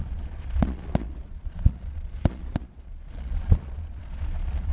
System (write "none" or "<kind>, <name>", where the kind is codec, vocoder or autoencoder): vocoder, Vocos